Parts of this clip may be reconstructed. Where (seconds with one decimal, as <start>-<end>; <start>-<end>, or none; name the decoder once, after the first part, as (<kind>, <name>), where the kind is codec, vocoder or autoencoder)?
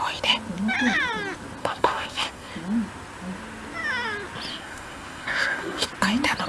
1.6-2.5 (codec, SNAC); 4.5-5.9